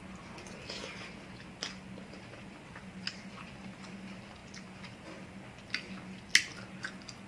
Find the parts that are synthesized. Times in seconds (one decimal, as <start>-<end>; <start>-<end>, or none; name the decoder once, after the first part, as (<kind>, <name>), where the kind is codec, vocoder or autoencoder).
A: none